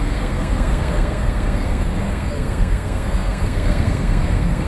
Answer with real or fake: fake